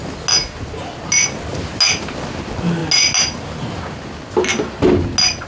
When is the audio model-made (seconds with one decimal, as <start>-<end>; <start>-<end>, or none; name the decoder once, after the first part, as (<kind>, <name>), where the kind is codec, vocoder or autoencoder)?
none